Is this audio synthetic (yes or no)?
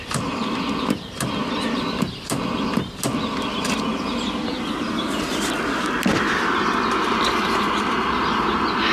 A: no